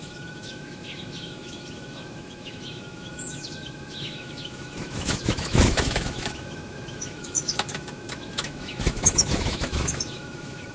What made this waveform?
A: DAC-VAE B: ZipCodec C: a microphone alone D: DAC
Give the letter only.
A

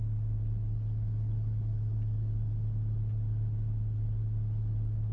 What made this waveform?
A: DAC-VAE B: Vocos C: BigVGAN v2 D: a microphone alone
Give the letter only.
D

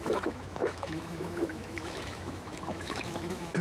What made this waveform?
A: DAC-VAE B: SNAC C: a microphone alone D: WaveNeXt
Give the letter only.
A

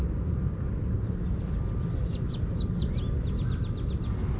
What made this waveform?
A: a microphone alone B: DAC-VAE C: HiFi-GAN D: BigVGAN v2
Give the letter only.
A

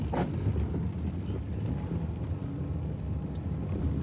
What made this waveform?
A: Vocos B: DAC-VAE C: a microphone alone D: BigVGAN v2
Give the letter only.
C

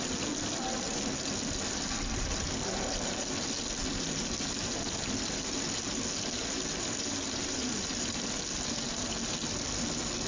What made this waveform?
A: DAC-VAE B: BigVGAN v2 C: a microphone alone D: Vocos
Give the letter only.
C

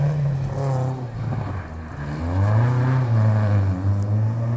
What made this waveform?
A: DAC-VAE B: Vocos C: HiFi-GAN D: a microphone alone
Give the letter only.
D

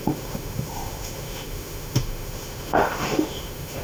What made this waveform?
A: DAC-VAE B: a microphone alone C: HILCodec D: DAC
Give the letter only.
A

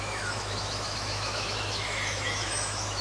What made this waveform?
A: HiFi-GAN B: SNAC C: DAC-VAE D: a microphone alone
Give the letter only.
C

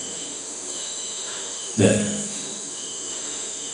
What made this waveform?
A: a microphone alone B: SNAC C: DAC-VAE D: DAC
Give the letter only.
C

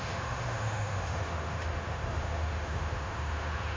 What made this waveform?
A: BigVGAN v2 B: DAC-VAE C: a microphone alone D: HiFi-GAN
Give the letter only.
B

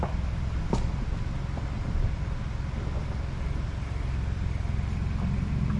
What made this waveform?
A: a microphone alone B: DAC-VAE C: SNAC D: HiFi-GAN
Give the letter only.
A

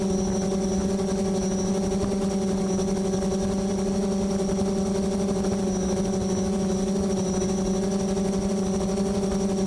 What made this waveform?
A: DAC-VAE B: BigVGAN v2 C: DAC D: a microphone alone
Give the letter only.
D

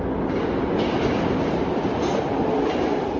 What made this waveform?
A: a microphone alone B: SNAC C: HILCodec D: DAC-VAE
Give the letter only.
A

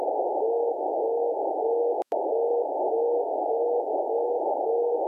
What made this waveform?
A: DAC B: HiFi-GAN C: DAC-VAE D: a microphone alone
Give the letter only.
C